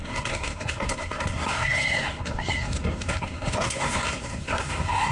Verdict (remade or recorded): remade